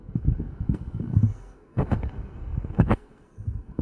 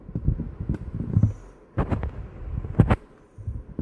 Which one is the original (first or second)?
second